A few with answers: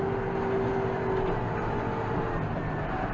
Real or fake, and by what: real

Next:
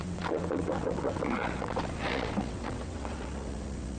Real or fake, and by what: fake, vocoder, WaveNeXt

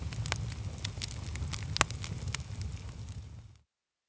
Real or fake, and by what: real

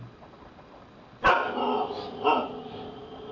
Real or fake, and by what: real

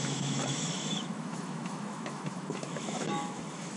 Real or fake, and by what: fake, autoencoder, DAC-VAE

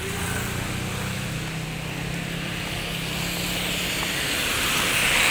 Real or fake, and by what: real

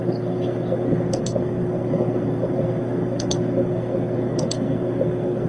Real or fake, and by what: fake, codec, SNAC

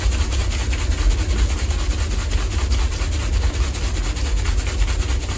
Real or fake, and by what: real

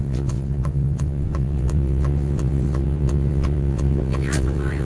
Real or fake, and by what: fake, vocoder, WaveNeXt